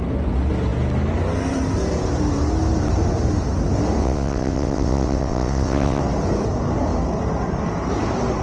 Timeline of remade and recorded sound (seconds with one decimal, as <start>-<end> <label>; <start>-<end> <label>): 0.0-4.0 recorded; 4.0-6.0 remade; 6.0-8.4 recorded